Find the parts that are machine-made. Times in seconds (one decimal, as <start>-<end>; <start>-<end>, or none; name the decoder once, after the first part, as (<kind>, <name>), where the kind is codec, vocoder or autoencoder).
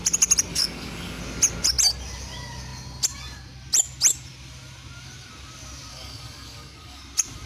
0.5-1.2 (codec, DAC); 5.9-7.0